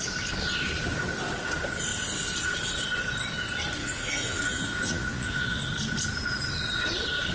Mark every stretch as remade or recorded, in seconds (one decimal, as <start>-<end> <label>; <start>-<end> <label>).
0.0-3.8 recorded; 3.8-5.6 remade; 5.6-7.3 recorded